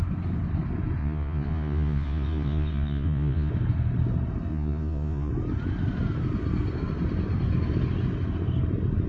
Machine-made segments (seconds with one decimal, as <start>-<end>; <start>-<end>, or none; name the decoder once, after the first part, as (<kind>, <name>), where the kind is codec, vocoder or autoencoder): 1.0-3.5 (vocoder, Vocos); 4.5-5.3